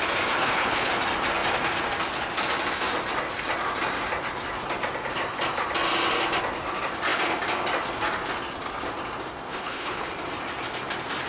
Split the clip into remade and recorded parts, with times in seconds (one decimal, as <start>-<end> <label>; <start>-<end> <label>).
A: 0.0-0.4 recorded; 0.4-0.9 remade; 0.9-9.5 recorded; 9.5-10.1 remade; 10.1-11.3 recorded